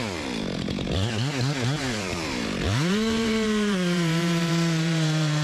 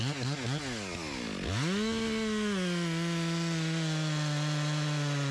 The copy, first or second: first